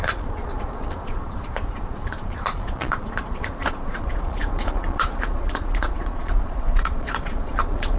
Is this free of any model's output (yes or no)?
no